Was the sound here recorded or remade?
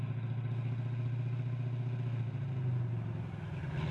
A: recorded